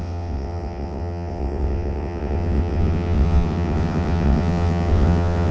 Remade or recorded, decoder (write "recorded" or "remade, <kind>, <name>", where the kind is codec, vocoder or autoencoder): remade, vocoder, WaveNeXt